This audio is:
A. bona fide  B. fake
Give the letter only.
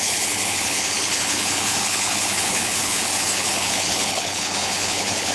B